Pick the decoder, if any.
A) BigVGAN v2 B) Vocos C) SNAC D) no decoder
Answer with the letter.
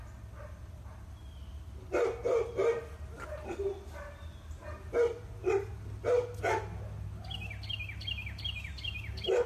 D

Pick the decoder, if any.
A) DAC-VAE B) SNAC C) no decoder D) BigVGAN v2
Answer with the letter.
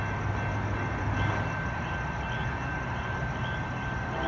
C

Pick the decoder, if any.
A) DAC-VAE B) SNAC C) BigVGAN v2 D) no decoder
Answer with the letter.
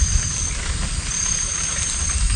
D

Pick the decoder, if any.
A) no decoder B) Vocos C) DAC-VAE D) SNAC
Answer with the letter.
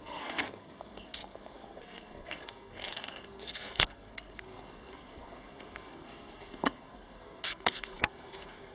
D